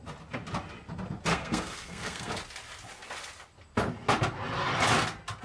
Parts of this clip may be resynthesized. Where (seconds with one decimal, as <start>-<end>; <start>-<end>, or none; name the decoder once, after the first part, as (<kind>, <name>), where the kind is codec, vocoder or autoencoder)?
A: 1.3-2.3 (codec, SNAC)